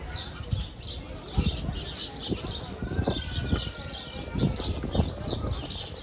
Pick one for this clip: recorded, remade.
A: recorded